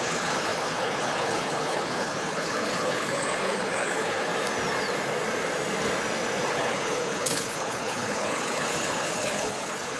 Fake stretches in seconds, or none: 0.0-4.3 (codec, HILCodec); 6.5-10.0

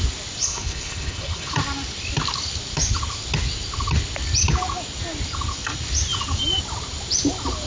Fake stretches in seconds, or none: 0.4-1.5 (codec, HILCodec)

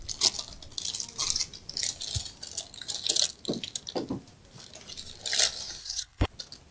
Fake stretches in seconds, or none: 5.8-6.3 (codec, HILCodec)

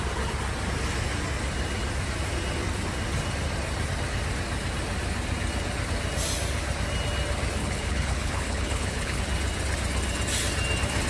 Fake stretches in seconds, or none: 7.6-9.2 (codec, HILCodec)